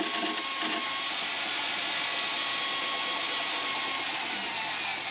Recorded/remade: recorded